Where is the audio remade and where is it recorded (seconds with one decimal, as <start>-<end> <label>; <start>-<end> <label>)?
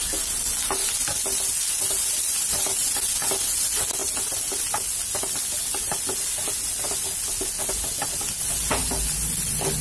0.0-9.8 recorded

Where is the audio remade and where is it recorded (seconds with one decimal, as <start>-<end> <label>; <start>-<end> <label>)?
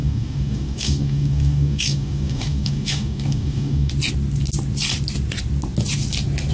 0.0-3.9 remade; 3.9-6.5 recorded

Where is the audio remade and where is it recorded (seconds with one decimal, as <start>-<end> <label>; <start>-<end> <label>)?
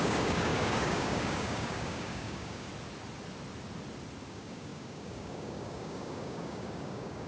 0.0-2.7 remade; 2.7-4.3 recorded; 4.3-7.3 remade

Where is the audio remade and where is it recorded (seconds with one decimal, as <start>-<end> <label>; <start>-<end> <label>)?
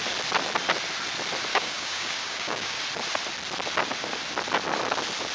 0.0-1.5 recorded; 1.5-2.8 remade; 2.8-5.3 recorded